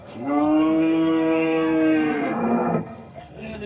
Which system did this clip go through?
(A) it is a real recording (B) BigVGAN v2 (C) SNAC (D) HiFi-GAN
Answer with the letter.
C